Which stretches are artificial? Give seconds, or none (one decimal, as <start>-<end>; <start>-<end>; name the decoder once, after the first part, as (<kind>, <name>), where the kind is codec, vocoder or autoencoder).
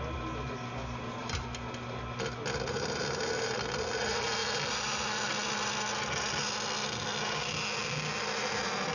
none